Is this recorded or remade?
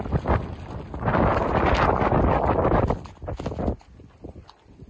recorded